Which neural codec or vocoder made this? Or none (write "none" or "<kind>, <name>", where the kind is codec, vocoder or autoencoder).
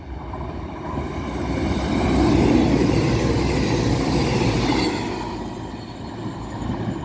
none